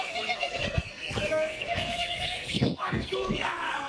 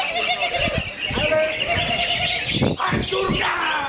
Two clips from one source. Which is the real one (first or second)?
second